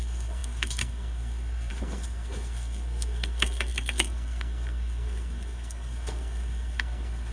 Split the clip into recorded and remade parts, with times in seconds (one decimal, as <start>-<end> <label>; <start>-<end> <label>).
0.0-7.3 remade